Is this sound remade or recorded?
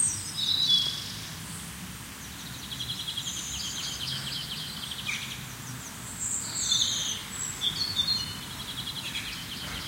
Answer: recorded